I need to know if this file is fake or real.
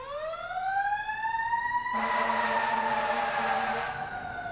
real